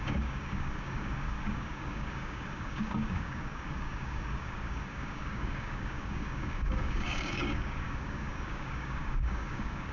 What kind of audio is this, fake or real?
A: fake